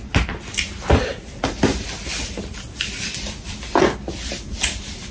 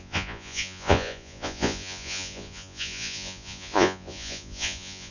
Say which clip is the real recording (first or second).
first